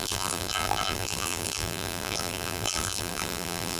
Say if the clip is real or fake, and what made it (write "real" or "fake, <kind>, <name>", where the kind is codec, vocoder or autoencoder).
fake, vocoder, BigVGAN v2